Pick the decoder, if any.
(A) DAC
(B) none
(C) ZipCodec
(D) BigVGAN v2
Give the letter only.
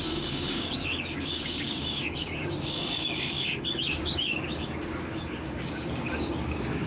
A